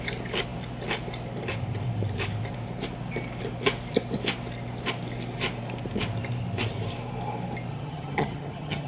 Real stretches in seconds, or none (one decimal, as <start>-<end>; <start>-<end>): 0.0-7.7